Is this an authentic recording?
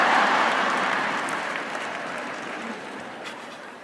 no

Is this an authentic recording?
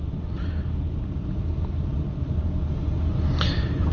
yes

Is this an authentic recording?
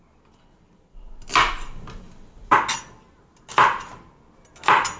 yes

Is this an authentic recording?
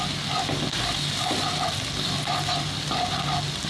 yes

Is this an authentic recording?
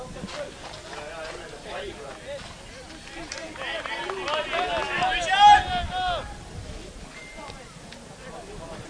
yes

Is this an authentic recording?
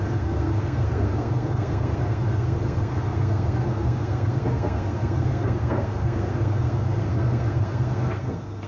no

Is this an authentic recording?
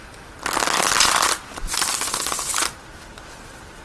yes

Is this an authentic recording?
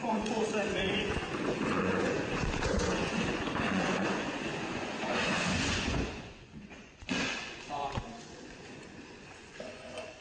no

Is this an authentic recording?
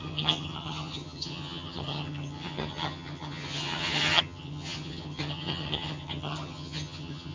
no